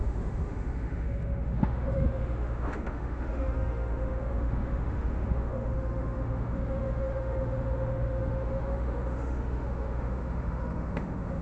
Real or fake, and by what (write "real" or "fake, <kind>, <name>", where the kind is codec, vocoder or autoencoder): fake, autoencoder, DAC-VAE